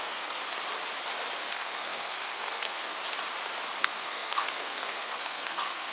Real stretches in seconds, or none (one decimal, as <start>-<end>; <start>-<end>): 0.4-1.5; 3.0-3.8